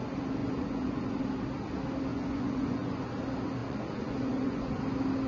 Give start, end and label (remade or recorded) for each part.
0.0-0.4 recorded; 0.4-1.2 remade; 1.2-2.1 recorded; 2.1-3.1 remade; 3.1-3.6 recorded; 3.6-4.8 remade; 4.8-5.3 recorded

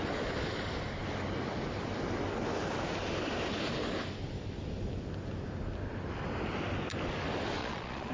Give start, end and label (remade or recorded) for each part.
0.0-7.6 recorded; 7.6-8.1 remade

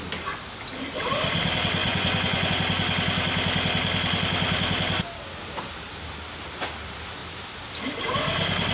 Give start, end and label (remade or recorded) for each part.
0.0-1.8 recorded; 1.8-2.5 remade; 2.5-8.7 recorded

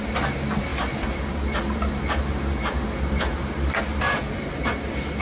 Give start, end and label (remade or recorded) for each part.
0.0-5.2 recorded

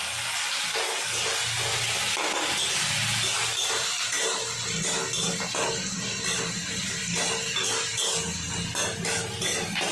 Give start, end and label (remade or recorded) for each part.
0.0-9.9 recorded

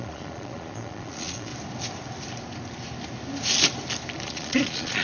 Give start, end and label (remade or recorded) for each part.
0.0-1.5 remade; 1.5-4.2 recorded; 4.2-5.0 remade

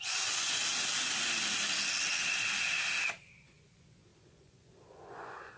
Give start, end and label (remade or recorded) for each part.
0.0-0.6 remade; 0.6-3.2 recorded; 3.2-5.6 remade

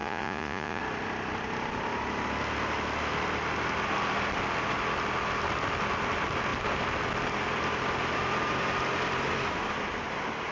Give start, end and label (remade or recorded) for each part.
0.0-0.8 remade; 0.8-10.5 recorded